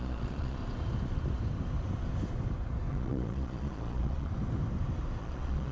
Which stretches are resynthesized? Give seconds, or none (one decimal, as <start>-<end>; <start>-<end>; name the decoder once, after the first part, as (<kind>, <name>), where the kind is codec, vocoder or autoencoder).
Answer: 0.0-0.6 (vocoder, Vocos); 2.9-4.3; 5.2-5.7